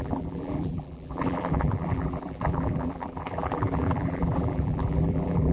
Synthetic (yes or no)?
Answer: yes